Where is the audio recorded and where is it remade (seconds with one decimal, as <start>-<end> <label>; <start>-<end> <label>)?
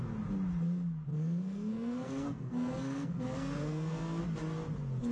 0.0-1.1 recorded; 1.1-4.2 remade; 4.2-5.1 recorded